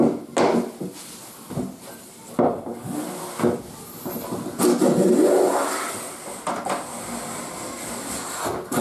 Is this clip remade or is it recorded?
recorded